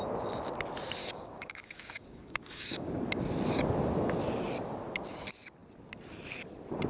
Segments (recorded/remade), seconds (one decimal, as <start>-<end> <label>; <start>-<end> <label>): 0.0-1.0 recorded; 1.0-2.9 remade; 2.9-6.9 recorded